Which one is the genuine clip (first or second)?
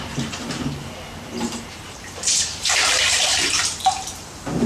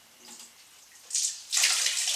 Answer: second